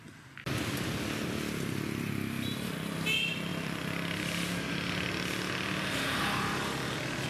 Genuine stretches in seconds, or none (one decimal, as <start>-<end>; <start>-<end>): 0.0-7.3